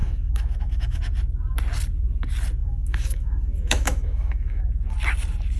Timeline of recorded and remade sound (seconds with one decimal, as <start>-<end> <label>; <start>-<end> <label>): 0.0-1.0 remade; 1.0-2.6 recorded; 2.6-4.6 remade; 4.6-5.6 recorded